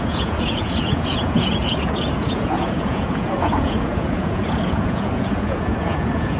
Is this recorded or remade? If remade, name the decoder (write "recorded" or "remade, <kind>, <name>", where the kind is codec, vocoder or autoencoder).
remade, vocoder, Vocos